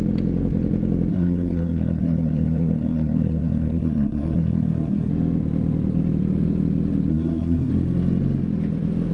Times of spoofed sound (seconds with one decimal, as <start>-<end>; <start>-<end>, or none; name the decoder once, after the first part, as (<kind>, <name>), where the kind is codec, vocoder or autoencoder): 1.1-5.1 (codec, SNAC); 7.1-7.7